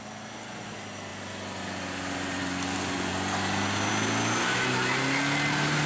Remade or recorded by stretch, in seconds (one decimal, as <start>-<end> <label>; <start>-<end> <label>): 0.0-5.9 recorded